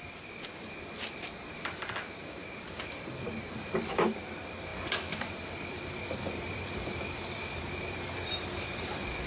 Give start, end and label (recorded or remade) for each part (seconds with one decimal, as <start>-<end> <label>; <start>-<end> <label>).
0.0-2.4 recorded; 2.4-4.2 remade; 4.2-4.7 recorded; 4.7-7.6 remade; 7.6-9.3 recorded